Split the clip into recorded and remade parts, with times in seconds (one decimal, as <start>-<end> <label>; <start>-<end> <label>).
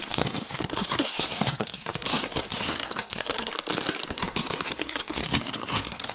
0.0-3.5 remade; 3.5-4.1 recorded; 4.1-6.1 remade